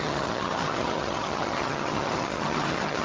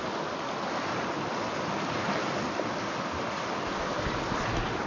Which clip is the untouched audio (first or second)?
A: second